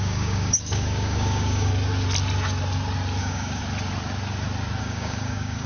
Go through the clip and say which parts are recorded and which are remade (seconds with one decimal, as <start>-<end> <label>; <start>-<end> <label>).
0.0-1.7 remade; 1.7-3.2 recorded; 3.2-3.6 remade; 3.6-4.8 recorded; 4.8-5.7 remade